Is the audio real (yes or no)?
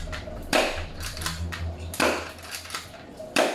no